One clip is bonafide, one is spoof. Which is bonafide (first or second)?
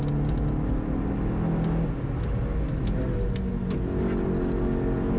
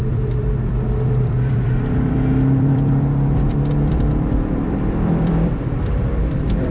first